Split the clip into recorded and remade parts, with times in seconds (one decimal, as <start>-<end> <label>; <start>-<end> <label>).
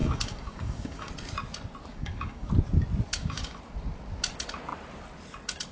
0.0-1.1 remade; 1.1-1.9 recorded; 1.9-2.5 remade; 2.5-3.1 recorded; 3.1-3.6 remade; 3.6-5.7 recorded